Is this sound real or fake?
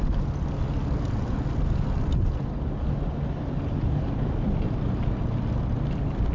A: real